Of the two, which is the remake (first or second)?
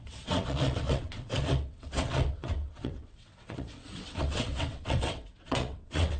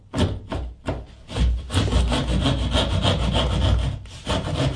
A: first